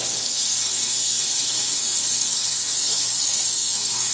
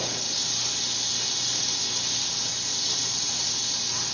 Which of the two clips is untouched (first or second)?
second